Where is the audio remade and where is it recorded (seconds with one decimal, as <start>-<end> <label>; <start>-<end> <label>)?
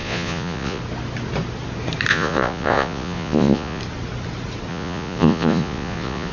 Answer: 0.0-0.8 remade; 0.8-2.1 recorded; 2.1-3.8 remade; 3.8-4.7 recorded; 4.7-6.3 remade